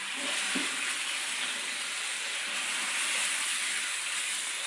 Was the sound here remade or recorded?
recorded